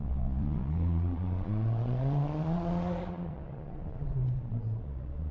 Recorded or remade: remade